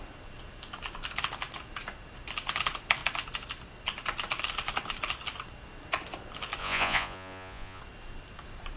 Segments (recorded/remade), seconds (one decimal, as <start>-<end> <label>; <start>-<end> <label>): 0.0-6.6 recorded; 6.6-7.8 remade; 7.8-8.8 recorded